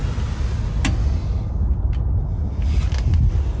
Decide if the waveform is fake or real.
real